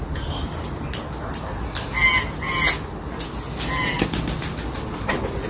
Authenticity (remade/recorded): recorded